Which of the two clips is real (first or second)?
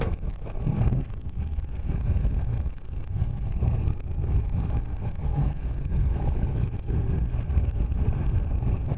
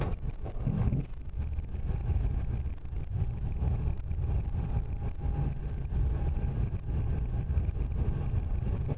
second